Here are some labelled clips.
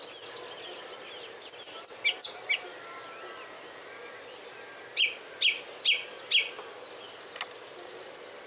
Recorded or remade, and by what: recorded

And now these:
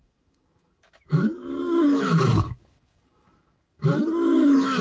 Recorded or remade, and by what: remade, autoencoder, DAC-VAE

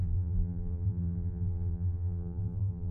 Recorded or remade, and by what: remade, vocoder, BigVGAN v2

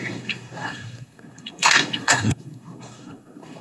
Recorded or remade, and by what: remade, codec, SNAC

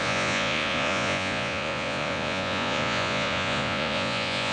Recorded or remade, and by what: remade, vocoder, Vocos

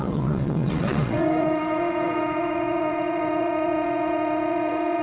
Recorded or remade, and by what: remade, vocoder, WaveNeXt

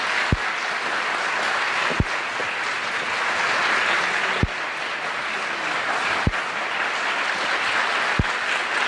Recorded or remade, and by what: recorded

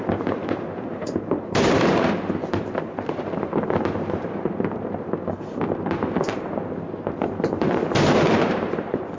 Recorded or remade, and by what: remade, vocoder, BigVGAN v2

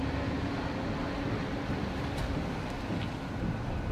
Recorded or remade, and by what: recorded